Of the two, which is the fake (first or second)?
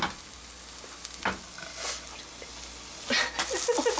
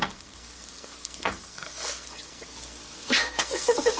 second